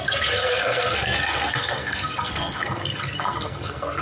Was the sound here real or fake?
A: fake